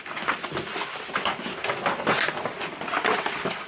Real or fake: real